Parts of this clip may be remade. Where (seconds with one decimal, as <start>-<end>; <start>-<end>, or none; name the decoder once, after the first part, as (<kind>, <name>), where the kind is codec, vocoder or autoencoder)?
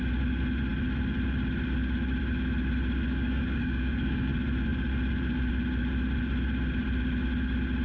3.1-4.3 (codec, DAC)